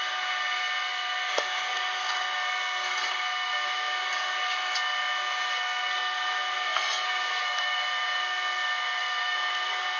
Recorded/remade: remade